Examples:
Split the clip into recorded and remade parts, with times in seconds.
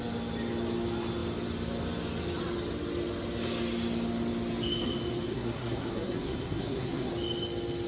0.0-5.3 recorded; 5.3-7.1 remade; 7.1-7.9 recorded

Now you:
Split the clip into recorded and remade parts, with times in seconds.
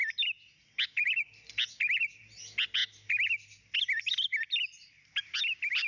0.0-5.9 recorded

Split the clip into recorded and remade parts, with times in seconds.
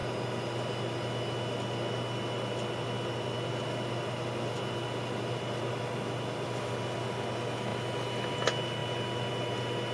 0.0-9.9 recorded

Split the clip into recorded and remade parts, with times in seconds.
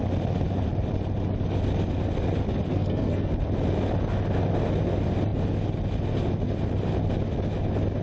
0.0-2.7 recorded; 2.7-3.3 remade; 3.3-8.0 recorded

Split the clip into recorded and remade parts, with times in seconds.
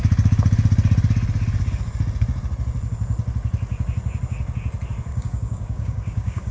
0.0-5.1 recorded; 5.1-6.5 remade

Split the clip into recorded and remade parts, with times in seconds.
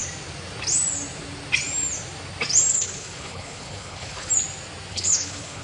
0.0-2.7 recorded; 2.7-4.3 remade; 4.3-4.9 recorded; 4.9-5.6 remade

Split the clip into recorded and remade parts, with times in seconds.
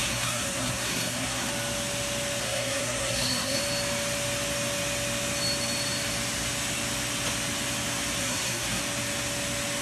0.0-1.5 remade; 1.5-2.4 recorded; 2.4-3.6 remade; 3.6-8.2 recorded; 8.2-8.8 remade; 8.8-9.8 recorded